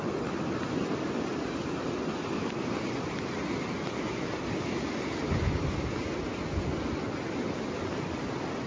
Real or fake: real